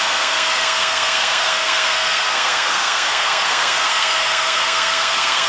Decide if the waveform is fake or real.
fake